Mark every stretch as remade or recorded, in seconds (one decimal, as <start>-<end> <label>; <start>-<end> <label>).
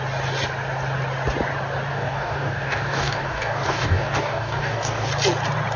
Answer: 0.0-1.9 recorded; 1.9-5.1 remade; 5.1-5.8 recorded